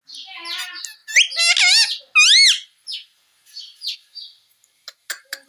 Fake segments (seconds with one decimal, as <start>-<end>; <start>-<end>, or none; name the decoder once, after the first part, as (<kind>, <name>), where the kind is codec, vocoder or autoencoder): none